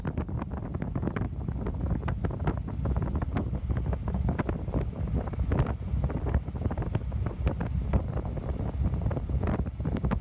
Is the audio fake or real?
real